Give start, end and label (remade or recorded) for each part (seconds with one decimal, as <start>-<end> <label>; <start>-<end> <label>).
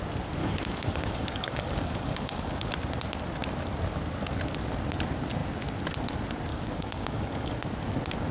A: 0.0-0.4 recorded; 0.4-2.7 remade; 2.7-6.5 recorded; 6.5-7.5 remade; 7.5-8.3 recorded